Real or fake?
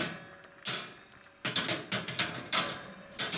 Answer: real